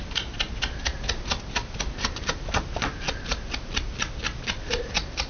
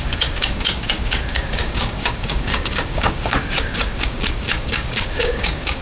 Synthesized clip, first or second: second